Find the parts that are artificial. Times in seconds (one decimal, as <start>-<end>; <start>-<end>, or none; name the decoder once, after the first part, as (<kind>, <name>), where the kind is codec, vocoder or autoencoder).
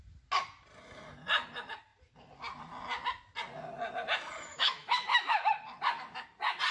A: 4.5-5.5 (autoencoder, DAC-VAE)